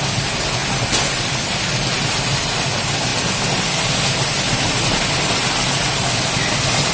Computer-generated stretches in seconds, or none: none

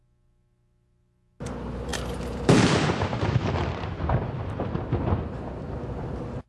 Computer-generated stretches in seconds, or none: none

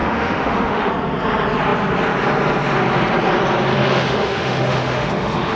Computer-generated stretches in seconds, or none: 0.0-0.9 (autoencoder, DAC-VAE); 3.7-5.6

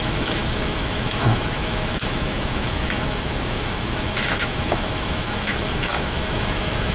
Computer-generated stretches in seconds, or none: 0.0-6.9 (autoencoder, DAC-VAE)

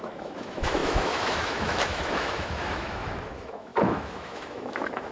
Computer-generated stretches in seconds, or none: 0.0-5.1 (autoencoder, DAC-VAE)

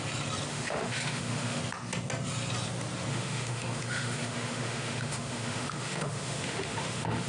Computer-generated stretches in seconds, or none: 0.5-1.6 (autoencoder, DAC-VAE); 3.1-7.3

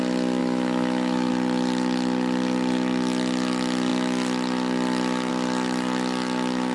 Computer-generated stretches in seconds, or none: 0.4-1.3 (autoencoder, DAC-VAE)

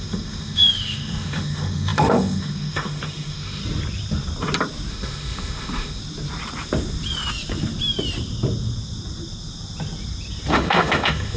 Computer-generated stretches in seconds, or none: 0.0-3.6 (autoencoder, DAC-VAE); 4.9-6.0; 10.5-11.4